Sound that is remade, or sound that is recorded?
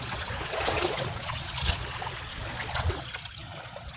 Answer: remade